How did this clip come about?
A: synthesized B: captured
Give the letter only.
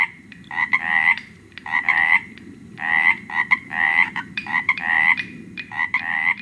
A